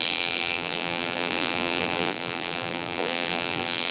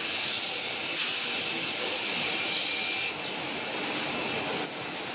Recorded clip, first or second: second